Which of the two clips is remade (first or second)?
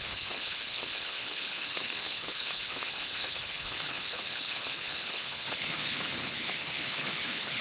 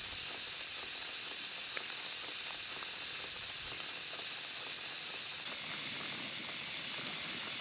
first